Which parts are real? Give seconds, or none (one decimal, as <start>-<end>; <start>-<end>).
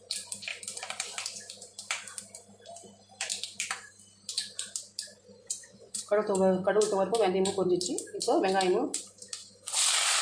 0.0-5.4; 6.0-10.2